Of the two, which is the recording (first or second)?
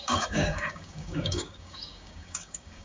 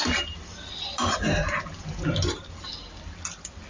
second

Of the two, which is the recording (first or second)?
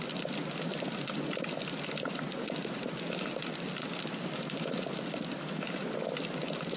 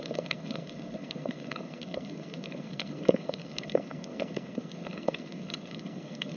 first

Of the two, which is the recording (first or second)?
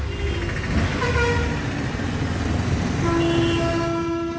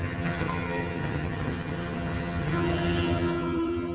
first